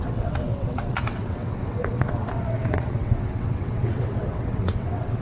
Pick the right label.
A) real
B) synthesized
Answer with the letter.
B